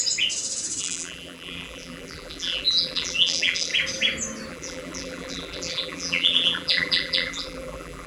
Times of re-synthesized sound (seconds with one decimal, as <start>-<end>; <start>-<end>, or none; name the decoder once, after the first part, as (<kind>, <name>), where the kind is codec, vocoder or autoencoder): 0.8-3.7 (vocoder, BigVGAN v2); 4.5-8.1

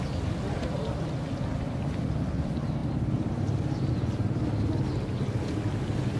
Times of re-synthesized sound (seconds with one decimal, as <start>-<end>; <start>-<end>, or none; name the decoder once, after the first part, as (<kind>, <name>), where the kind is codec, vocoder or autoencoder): none

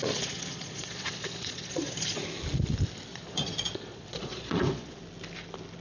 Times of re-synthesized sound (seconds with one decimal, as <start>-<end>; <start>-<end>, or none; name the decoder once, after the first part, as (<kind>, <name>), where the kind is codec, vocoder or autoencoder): 0.0-2.2 (vocoder, Vocos); 3.1-5.0

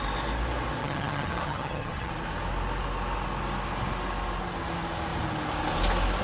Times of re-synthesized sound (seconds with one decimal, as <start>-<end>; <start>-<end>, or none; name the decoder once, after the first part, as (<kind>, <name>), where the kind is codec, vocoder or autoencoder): 0.8-2.1 (vocoder, HiFi-GAN)